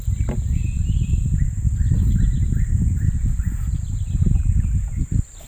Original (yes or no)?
yes